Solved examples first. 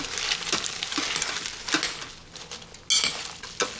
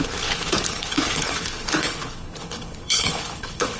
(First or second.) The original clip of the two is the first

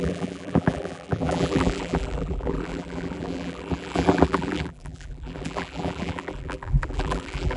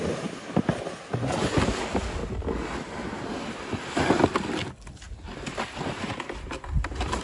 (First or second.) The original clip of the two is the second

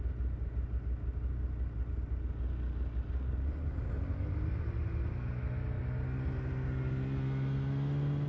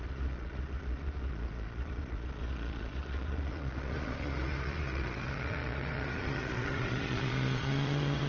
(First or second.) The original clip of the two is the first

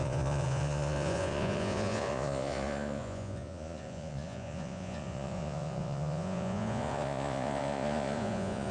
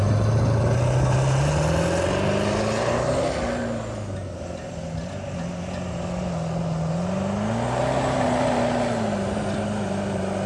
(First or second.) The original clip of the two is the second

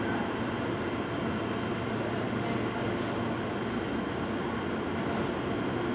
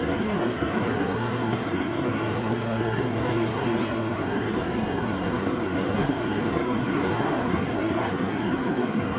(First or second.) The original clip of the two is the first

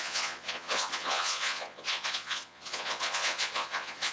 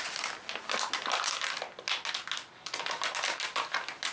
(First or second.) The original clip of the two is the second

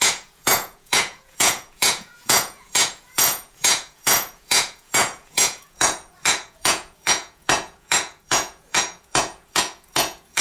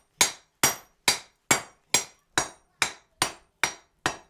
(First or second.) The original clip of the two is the second